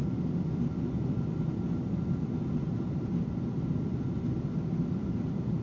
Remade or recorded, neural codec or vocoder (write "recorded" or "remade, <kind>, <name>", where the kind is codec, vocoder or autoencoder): recorded